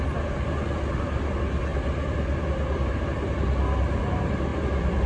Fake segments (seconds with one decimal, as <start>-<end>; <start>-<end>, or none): none